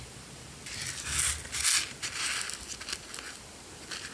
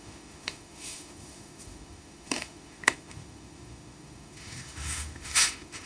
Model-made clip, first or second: second